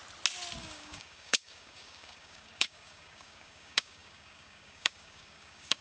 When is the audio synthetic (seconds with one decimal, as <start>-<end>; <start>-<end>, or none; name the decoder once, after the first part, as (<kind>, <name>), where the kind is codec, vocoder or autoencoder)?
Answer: 0.6-5.8 (codec, DAC)